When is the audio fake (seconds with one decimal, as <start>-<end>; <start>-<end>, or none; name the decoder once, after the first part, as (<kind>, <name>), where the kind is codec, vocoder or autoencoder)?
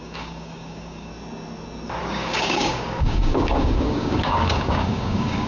0.0-1.1 (codec, DAC); 2.0-5.5